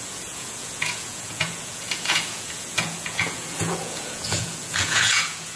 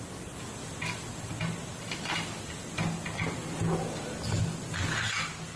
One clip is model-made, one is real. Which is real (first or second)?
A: second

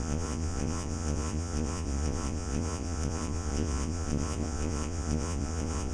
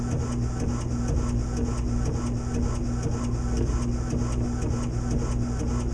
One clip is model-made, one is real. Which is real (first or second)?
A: second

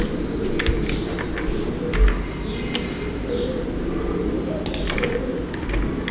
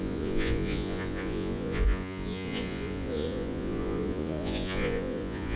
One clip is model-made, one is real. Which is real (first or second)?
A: first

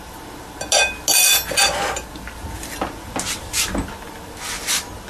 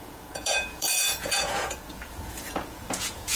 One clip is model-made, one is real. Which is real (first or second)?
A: first